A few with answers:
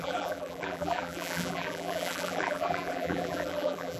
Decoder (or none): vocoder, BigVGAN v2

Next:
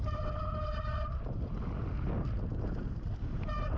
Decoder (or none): none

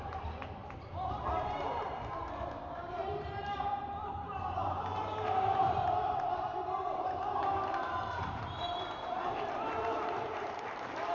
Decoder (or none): vocoder, BigVGAN v2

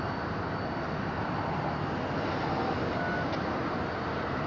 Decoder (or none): none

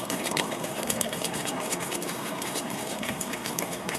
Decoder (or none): codec, SNAC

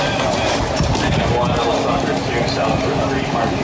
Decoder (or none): none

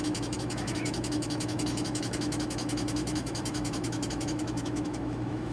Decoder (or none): autoencoder, DAC-VAE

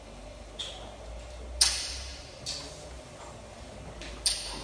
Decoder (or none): none